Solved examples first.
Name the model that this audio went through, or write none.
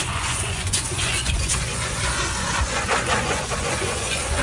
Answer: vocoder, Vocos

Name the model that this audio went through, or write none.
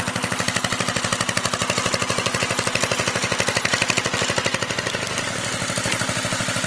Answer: none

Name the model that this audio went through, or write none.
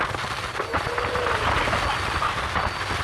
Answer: none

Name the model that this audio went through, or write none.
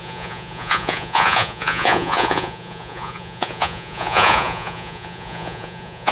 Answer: vocoder, Vocos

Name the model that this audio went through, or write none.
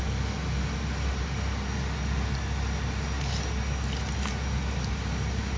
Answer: none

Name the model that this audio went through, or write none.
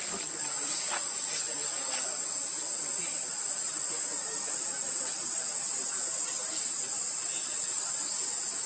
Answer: none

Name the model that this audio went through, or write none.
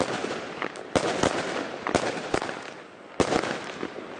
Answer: none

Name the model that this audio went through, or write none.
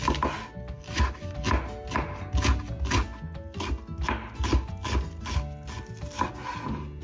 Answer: none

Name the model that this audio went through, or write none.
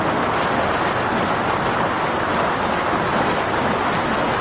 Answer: none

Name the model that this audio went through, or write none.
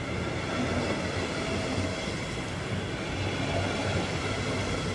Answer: none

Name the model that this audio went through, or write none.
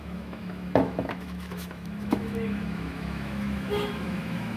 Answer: autoencoder, DAC-VAE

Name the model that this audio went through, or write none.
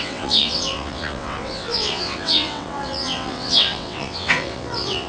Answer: vocoder, WaveNeXt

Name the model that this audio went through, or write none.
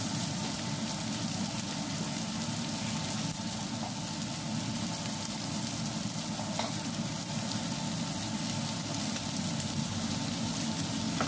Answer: none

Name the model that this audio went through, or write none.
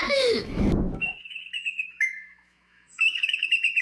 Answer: autoencoder, DAC-VAE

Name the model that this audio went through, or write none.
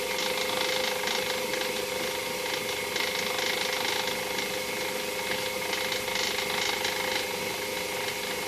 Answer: none